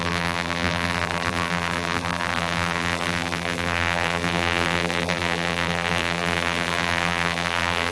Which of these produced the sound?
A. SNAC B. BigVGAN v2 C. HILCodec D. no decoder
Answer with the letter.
B